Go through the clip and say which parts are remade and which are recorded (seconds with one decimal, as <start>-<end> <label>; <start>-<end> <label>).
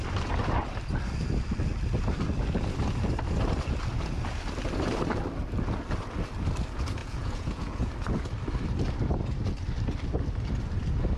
0.0-7.0 recorded; 7.0-7.9 remade; 7.9-11.2 recorded